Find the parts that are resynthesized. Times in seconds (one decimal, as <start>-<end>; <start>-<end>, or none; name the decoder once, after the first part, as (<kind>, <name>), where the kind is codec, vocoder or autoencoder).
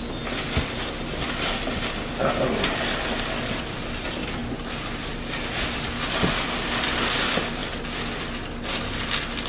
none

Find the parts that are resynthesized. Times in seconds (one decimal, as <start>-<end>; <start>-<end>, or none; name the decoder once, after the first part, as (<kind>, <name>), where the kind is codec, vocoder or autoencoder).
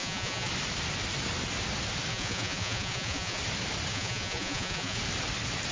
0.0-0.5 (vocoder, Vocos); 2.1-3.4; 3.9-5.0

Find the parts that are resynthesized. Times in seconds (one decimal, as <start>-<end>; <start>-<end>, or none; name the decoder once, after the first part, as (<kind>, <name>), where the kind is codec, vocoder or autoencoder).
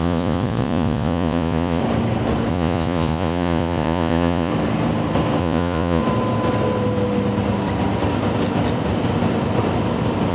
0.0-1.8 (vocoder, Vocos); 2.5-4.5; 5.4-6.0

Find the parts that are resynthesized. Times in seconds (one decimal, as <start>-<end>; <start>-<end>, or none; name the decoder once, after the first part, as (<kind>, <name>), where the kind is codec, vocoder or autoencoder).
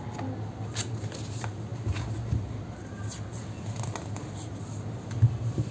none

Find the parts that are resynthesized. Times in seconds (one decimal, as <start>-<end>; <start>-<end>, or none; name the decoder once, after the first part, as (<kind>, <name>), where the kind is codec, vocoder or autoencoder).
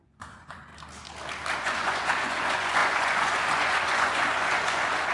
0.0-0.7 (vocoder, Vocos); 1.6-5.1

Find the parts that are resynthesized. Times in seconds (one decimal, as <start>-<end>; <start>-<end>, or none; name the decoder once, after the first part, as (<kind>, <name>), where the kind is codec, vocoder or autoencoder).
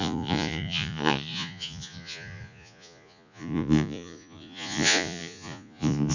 0.0-6.1 (vocoder, Vocos)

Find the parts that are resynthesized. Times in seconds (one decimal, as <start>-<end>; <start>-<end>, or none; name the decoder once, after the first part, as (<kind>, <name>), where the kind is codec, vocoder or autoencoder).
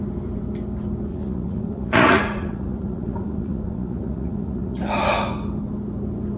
1.1-4.9 (vocoder, Vocos)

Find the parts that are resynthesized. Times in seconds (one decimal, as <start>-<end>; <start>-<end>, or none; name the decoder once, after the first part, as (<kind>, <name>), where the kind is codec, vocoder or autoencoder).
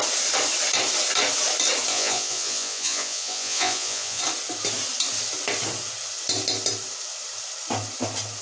1.9-4.2 (vocoder, Vocos)